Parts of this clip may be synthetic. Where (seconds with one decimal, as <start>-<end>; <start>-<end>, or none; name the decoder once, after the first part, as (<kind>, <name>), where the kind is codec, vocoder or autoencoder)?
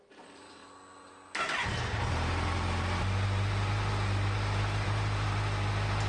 none